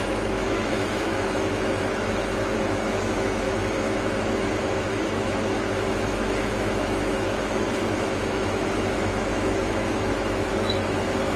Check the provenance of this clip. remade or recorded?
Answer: remade